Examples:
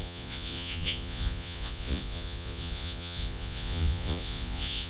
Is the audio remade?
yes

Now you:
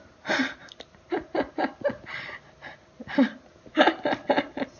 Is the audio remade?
no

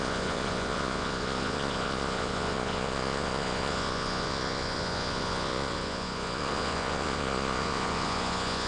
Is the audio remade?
yes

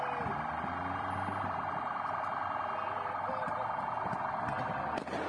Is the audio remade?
no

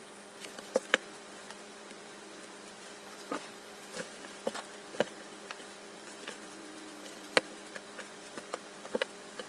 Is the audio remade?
yes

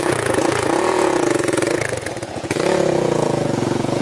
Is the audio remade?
yes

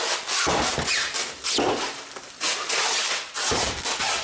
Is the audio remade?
no